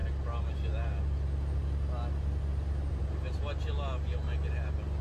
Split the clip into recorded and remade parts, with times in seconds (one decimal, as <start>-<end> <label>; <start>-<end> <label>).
0.0-5.0 recorded